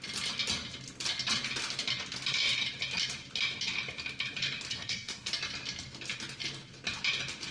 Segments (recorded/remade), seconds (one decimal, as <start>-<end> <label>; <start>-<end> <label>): 0.0-4.7 recorded; 4.7-5.3 remade; 5.3-7.5 recorded